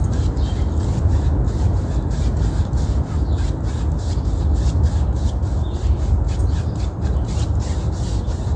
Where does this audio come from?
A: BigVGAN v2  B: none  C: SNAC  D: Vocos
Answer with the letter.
B